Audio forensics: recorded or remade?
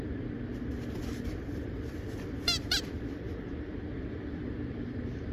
remade